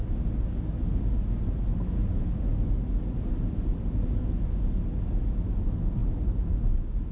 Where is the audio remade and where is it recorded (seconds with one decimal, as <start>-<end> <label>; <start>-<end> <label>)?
0.0-7.1 recorded